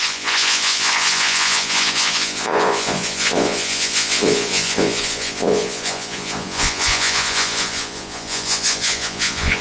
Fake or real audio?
fake